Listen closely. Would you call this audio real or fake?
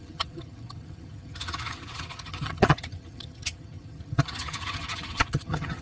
fake